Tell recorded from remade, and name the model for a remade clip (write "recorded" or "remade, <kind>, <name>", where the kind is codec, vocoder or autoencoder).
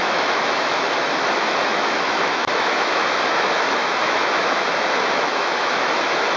remade, autoencoder, DAC-VAE